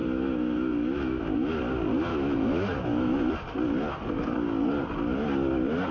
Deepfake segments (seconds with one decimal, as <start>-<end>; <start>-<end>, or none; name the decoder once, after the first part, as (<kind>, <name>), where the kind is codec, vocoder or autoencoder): 0.0-1.5 (autoencoder, DAC-VAE); 2.1-3.3